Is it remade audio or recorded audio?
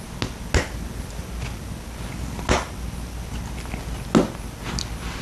recorded